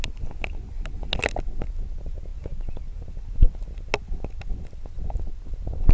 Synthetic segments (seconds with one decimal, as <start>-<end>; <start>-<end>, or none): none